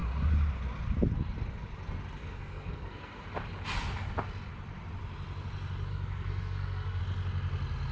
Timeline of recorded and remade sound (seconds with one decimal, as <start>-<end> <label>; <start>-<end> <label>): 0.0-2.2 recorded; 2.2-3.2 remade; 3.2-5.9 recorded; 5.9-7.0 remade; 7.0-7.9 recorded